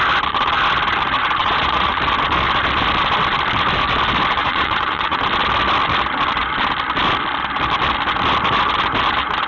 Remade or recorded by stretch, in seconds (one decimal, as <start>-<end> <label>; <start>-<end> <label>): 0.0-1.4 recorded; 1.4-2.0 remade; 2.0-4.4 recorded; 4.4-5.2 remade; 5.2-9.5 recorded